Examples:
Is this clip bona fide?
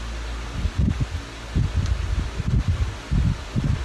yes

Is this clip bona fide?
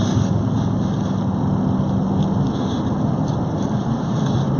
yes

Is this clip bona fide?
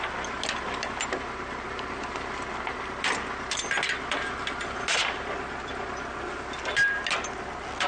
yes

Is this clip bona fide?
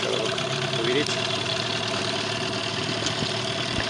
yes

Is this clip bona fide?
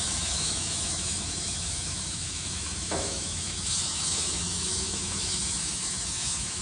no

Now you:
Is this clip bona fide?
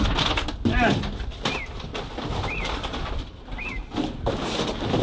yes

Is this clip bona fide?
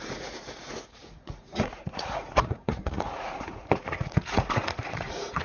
no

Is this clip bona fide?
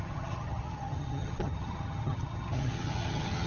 no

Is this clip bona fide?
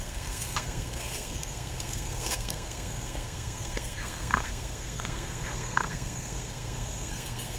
no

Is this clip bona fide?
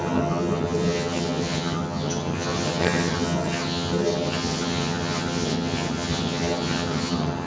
no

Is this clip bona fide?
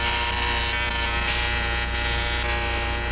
yes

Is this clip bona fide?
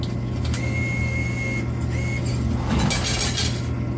yes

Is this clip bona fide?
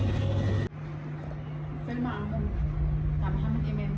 yes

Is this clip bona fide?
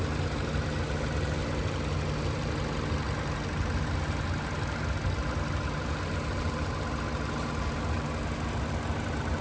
yes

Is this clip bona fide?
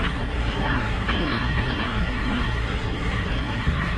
no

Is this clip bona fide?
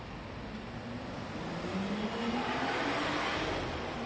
yes